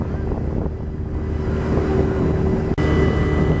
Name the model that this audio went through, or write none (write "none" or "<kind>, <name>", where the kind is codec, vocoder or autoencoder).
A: none